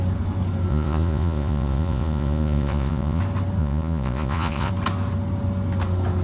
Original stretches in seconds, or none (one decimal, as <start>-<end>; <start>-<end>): 0.0-0.7; 3.2-3.6; 4.7-6.2